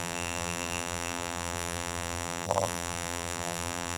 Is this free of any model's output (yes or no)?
no